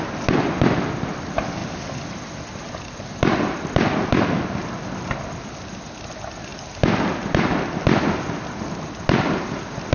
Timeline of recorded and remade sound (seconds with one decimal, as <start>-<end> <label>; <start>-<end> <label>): 0.0-9.9 recorded